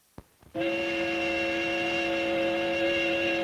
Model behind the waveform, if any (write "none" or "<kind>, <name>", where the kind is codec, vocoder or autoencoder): none